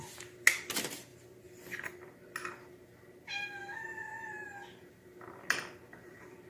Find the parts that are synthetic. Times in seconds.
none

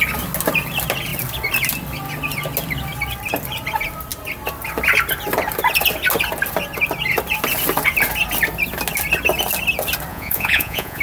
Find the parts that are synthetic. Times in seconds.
10.1-11.0

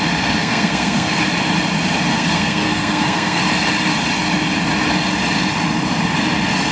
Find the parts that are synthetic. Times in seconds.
0.4-1.2; 2.1-3.4